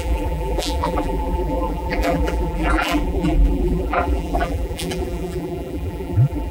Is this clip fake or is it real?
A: fake